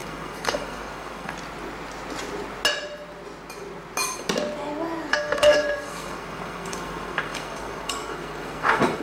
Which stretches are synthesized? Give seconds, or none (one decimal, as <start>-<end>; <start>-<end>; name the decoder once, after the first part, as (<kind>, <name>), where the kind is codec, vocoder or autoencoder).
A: 0.0-1.3 (codec, SNAC); 5.1-9.0